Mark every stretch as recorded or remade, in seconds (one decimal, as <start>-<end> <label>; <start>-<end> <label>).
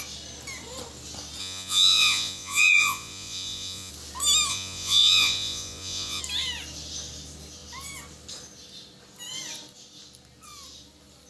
0.0-1.4 recorded; 1.4-3.9 remade; 3.9-4.5 recorded; 4.5-6.2 remade; 6.2-11.3 recorded